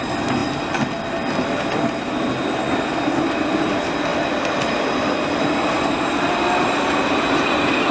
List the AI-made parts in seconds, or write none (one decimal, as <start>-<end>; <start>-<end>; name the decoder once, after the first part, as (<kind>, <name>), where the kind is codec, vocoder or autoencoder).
4.1-7.5 (vocoder, BigVGAN v2)